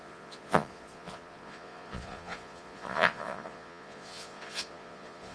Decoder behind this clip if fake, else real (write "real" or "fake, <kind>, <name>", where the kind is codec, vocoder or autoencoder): fake, vocoder, Vocos